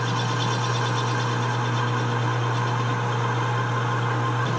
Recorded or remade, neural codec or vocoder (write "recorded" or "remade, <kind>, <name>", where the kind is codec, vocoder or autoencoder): recorded